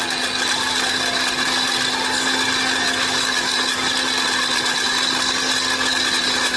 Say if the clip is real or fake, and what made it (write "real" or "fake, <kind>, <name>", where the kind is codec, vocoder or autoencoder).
real